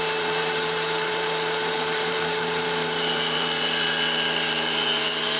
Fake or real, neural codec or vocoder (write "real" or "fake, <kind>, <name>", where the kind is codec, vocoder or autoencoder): fake, vocoder, BigVGAN v2